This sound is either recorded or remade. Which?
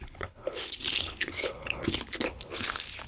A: remade